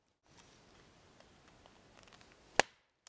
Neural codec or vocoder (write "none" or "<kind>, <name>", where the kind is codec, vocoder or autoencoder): none